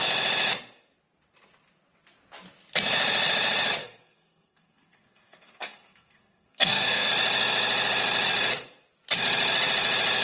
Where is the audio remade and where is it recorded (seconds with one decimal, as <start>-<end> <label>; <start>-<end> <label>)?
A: 0.0-3.8 recorded; 3.8-7.1 remade; 7.1-10.2 recorded